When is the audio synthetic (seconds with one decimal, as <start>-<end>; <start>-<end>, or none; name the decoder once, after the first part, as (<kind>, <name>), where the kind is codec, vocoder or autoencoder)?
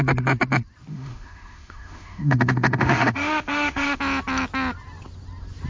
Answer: 0.9-4.0 (autoencoder, DAC-VAE)